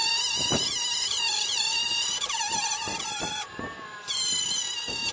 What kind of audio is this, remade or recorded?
recorded